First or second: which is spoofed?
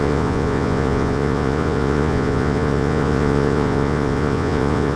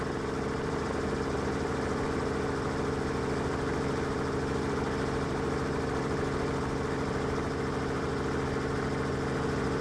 first